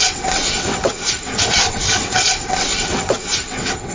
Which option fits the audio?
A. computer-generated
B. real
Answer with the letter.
A